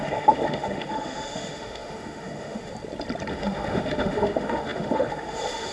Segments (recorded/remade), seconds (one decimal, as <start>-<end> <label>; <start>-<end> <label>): 0.0-2.7 remade; 2.7-3.3 recorded; 3.3-5.7 remade

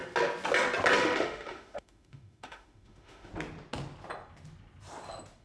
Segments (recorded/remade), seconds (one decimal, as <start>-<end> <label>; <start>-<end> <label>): 0.0-1.0 recorded; 1.0-3.3 remade; 3.3-5.4 recorded

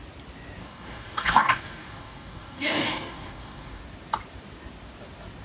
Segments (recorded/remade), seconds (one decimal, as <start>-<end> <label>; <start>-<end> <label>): 0.0-0.6 recorded; 0.6-3.8 remade; 3.8-5.4 recorded

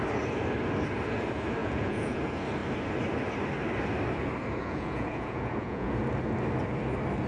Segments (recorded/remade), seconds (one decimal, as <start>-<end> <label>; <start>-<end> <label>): 0.0-1.6 recorded; 1.6-2.2 remade; 2.2-4.6 recorded; 4.6-6.0 remade; 6.0-7.3 recorded